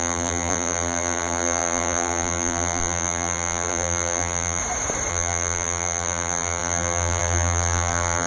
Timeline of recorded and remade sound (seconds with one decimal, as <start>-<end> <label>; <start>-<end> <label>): 0.0-4.6 remade; 4.6-5.1 recorded; 5.1-8.3 remade